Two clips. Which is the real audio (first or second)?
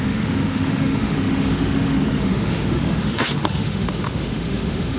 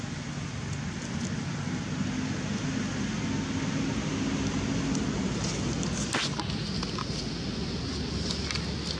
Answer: second